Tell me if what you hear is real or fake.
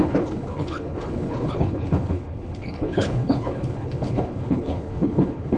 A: fake